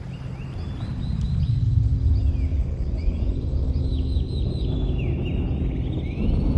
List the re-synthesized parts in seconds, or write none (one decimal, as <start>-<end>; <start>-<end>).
2.5-3.5